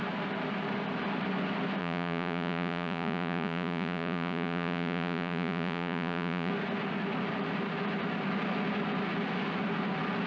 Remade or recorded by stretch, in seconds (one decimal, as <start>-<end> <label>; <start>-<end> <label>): 0.0-1.8 recorded; 1.8-6.5 remade; 6.5-10.3 recorded